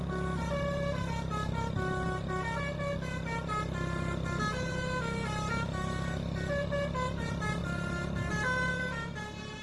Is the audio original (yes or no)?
yes